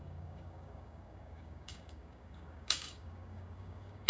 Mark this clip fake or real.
fake